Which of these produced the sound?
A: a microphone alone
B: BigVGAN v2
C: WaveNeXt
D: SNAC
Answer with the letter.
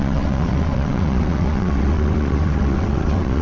C